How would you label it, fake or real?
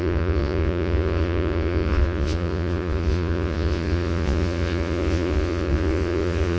fake